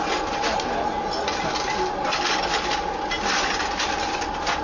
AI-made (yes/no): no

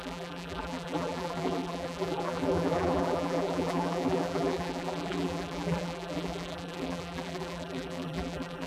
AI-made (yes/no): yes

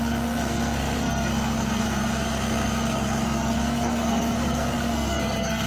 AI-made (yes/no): yes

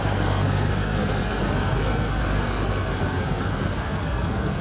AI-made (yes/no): yes